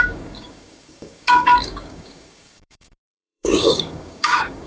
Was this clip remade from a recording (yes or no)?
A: yes